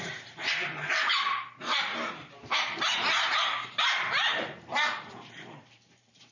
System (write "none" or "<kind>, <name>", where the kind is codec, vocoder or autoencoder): vocoder, BigVGAN v2